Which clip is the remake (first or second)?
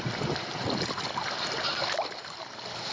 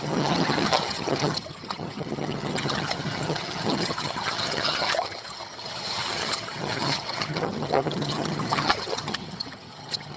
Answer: second